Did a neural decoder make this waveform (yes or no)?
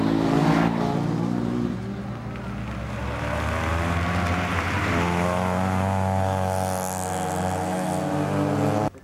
no